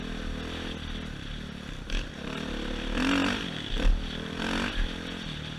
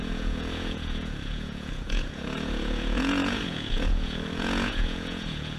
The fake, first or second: second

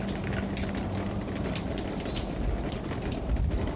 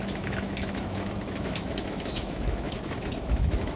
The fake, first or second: second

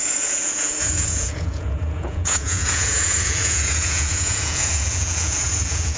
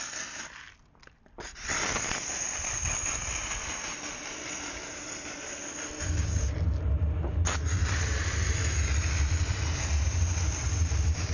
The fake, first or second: first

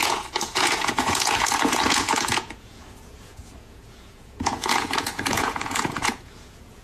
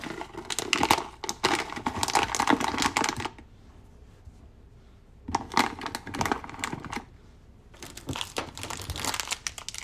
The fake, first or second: first